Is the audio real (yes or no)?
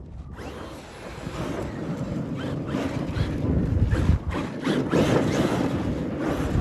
yes